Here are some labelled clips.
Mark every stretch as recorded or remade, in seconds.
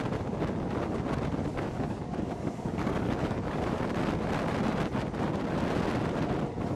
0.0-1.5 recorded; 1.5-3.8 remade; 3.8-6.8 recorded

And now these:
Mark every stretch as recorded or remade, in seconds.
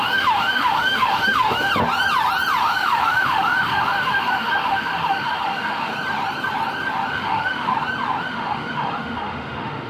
0.0-1.7 remade; 1.7-2.6 recorded; 2.6-5.9 remade; 5.9-7.1 recorded; 7.1-7.7 remade; 7.7-8.2 recorded; 8.2-9.9 remade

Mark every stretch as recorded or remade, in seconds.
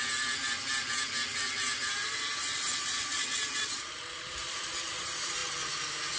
0.0-1.3 recorded; 1.3-5.0 remade; 5.0-6.2 recorded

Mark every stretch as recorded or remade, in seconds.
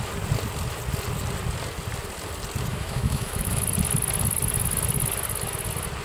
0.0-2.7 recorded; 2.7-3.6 remade; 3.6-6.0 recorded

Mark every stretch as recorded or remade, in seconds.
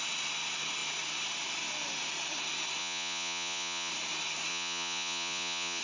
0.0-2.8 recorded; 2.8-3.9 remade; 3.9-4.5 recorded; 4.5-5.8 remade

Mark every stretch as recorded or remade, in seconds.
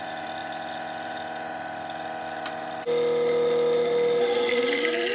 0.0-5.1 recorded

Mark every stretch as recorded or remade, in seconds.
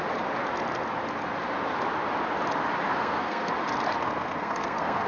0.0-2.9 recorded; 2.9-3.5 remade; 3.5-4.0 recorded; 4.0-5.1 remade